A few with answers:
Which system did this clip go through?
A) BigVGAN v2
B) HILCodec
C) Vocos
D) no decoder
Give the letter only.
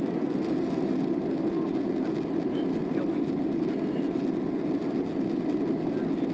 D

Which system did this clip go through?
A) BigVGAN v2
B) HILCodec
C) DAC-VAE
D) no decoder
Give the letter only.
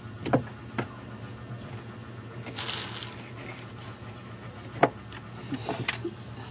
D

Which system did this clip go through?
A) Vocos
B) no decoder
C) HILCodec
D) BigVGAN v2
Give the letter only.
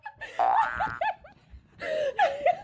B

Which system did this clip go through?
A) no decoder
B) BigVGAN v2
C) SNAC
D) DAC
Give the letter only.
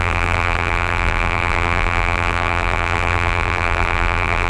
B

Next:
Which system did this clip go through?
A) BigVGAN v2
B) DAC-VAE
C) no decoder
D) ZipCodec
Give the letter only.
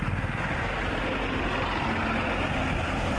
C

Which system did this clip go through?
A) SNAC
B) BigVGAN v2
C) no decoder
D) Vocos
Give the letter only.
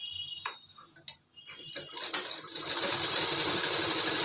B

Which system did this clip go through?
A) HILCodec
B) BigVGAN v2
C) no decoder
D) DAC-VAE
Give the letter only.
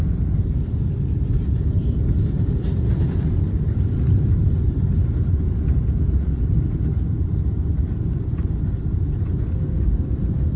B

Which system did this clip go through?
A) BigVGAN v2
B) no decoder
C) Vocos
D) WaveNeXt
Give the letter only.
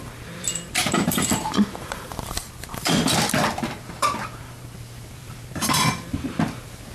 A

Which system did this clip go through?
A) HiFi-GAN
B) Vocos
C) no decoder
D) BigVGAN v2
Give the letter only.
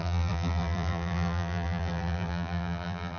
D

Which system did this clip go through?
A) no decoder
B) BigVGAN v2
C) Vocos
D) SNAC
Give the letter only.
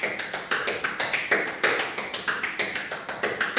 B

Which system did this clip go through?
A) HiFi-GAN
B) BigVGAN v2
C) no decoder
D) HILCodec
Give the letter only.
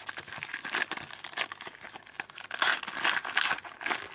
C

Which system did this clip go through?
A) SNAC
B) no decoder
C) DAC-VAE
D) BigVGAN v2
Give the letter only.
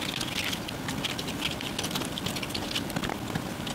B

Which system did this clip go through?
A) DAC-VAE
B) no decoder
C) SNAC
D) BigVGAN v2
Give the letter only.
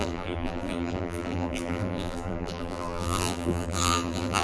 D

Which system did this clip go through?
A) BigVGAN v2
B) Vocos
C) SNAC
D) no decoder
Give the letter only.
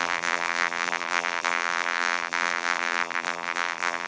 A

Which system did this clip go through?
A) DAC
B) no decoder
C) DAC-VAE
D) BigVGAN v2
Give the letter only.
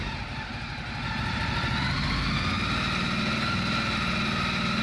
B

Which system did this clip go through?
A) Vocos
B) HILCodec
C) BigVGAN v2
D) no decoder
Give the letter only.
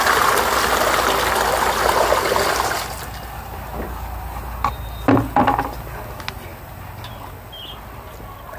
D